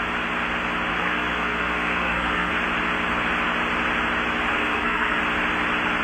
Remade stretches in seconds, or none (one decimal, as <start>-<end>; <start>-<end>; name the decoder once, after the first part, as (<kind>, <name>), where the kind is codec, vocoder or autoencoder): 0.9-2.5 (codec, SNAC); 4.5-5.2